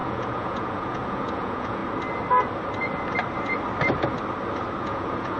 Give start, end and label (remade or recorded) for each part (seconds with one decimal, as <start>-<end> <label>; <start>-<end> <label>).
0.0-1.8 remade; 1.8-4.8 recorded; 4.8-5.4 remade